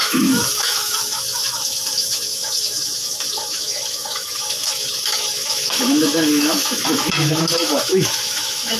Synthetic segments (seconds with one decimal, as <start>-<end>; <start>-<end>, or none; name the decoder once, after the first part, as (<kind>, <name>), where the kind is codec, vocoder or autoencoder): 0.0-8.8 (autoencoder, DAC-VAE)